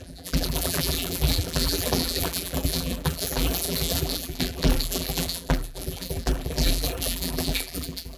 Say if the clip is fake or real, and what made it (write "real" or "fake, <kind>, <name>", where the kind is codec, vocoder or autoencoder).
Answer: fake, vocoder, BigVGAN v2